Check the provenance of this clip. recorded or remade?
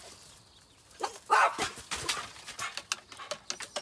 recorded